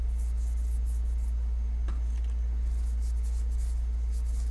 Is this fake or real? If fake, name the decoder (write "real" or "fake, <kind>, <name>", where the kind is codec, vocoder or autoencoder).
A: real